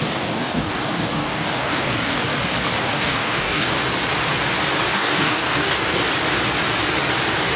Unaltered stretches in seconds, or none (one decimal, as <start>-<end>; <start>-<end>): 2.3-2.8; 3.8-4.9; 6.0-7.6